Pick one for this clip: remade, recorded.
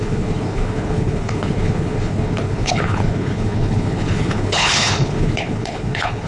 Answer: remade